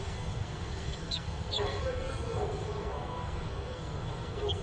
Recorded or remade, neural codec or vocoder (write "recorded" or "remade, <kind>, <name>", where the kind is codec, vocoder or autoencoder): remade, codec, SNAC